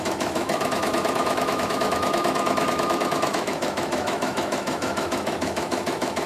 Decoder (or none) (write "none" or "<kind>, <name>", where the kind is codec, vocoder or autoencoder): autoencoder, DAC-VAE